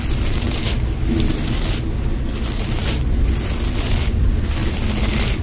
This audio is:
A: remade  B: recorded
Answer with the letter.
B